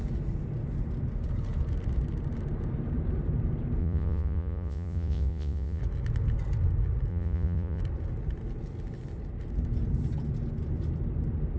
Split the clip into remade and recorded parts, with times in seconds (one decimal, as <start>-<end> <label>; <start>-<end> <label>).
0.0-3.8 recorded; 3.8-5.8 remade; 5.8-7.1 recorded; 7.1-7.8 remade; 7.8-11.6 recorded